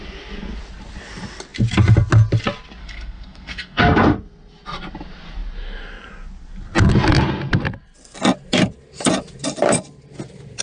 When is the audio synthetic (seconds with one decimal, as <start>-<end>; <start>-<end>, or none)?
2.8-3.8